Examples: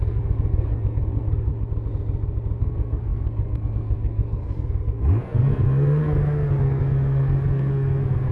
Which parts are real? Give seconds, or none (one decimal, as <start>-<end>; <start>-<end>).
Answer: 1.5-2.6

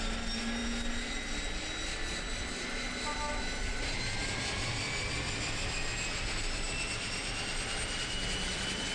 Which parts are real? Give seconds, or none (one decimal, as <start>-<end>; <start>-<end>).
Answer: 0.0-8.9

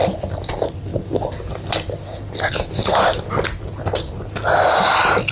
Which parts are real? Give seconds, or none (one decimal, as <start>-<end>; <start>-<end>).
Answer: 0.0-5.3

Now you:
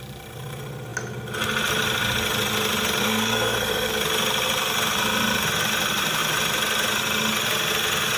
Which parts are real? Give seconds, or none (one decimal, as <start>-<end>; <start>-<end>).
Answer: 0.0-3.0; 3.9-8.2

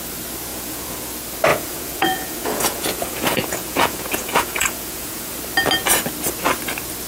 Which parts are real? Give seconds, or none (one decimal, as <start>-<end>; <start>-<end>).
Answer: 0.0-0.5; 1.1-1.5; 5.3-7.1

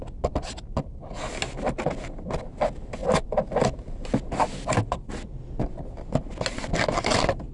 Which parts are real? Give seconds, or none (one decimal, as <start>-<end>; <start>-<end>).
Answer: 0.0-7.5

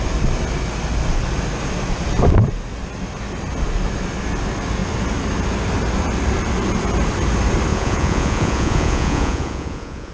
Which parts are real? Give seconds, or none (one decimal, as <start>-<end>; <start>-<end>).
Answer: 0.0-7.7